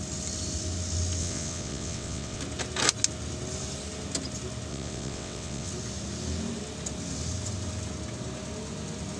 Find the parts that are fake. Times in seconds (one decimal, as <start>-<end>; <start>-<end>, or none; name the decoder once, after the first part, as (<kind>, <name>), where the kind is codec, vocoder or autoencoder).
1.2-2.4 (vocoder, WaveNeXt); 4.7-5.7